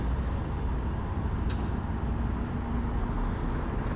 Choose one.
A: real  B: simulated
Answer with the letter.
A